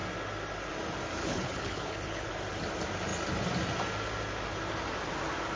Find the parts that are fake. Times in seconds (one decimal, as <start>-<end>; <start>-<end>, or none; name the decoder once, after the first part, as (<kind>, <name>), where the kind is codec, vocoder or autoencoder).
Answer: 1.2-2.3 (codec, HILCodec)